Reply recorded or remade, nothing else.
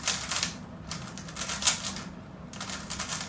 recorded